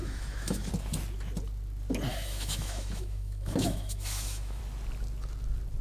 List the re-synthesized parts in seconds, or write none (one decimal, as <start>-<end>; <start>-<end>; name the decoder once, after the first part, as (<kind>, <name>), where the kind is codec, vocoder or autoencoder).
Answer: 0.0-0.7 (autoencoder, DAC-VAE); 2.1-4.6